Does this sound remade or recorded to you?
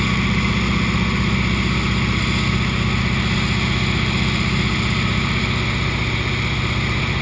recorded